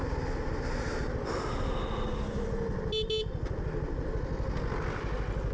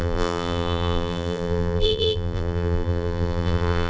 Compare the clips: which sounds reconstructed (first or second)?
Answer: second